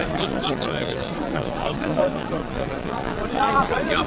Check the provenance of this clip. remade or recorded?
remade